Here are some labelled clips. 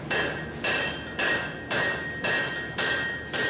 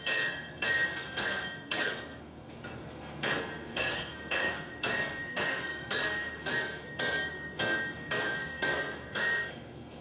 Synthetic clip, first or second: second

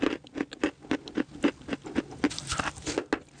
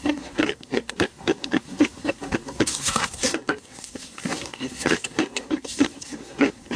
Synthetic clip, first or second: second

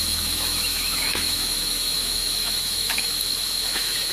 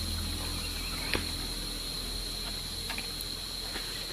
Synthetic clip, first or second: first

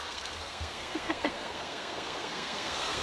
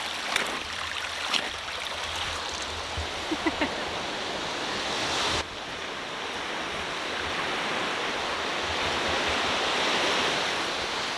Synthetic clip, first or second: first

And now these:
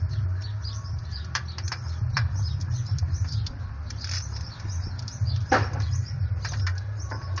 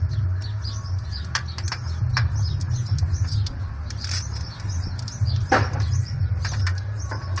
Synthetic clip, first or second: first